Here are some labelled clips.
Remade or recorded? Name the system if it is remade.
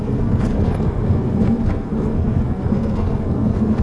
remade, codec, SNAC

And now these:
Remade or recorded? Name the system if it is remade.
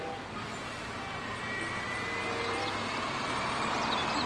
recorded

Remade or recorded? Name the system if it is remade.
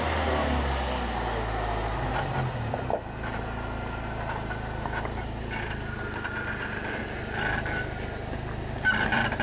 recorded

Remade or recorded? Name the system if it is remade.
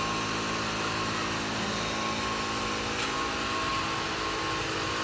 recorded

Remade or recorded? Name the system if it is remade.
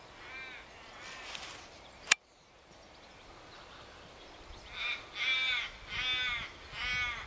recorded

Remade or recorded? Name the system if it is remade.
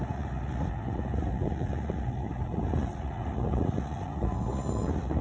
remade, vocoder, Vocos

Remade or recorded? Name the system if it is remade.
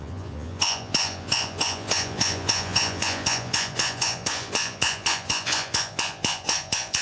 remade, vocoder, Vocos